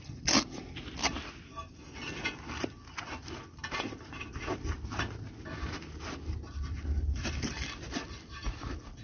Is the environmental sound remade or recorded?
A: recorded